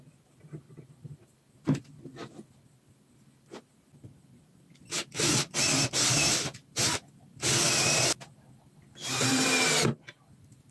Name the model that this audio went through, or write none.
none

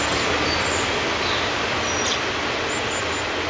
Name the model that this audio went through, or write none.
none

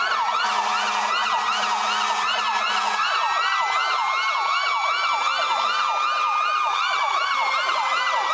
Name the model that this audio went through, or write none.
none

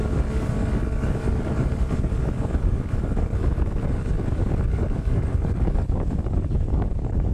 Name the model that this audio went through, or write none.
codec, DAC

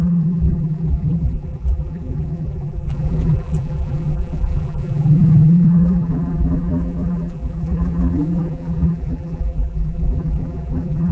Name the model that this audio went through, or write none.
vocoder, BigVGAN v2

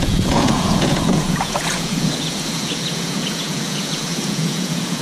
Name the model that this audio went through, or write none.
vocoder, Vocos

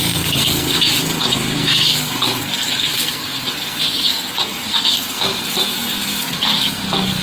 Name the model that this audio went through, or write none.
codec, SNAC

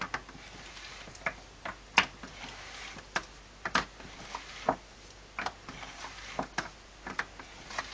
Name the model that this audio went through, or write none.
none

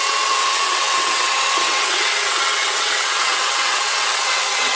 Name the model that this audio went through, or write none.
vocoder, WaveNeXt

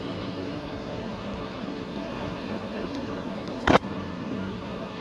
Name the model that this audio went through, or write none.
codec, SNAC